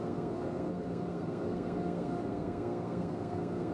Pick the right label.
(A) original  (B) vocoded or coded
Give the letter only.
B